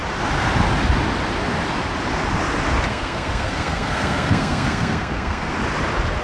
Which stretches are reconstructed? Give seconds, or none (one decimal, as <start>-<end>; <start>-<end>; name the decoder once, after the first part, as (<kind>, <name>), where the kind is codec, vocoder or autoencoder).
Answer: 2.9-5.5 (codec, SNAC)